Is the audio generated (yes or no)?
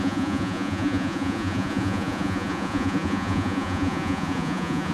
yes